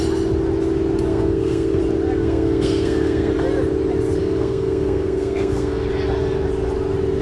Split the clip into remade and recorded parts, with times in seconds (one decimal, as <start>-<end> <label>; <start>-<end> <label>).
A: 0.0-1.1 recorded; 1.1-1.8 remade; 1.8-2.2 recorded; 2.2-3.3 remade; 3.3-4.2 recorded; 4.2-5.9 remade; 5.9-7.2 recorded